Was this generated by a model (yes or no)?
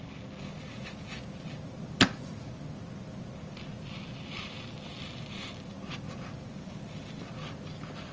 no